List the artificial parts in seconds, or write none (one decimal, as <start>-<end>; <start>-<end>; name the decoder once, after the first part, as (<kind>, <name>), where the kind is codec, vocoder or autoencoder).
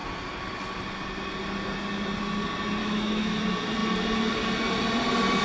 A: 2.8-3.4 (autoencoder, DAC-VAE)